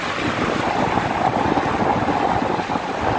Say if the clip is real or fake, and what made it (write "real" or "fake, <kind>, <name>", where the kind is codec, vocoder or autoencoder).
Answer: real